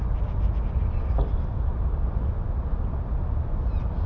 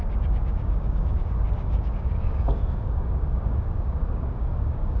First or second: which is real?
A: first